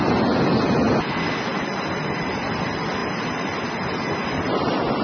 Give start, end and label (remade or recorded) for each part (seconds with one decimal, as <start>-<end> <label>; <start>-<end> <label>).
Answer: 0.0-5.0 recorded